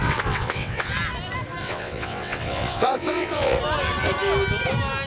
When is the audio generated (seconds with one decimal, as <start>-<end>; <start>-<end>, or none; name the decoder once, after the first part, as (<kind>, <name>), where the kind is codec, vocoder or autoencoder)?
0.0-0.9 (vocoder, WaveNeXt); 1.6-3.6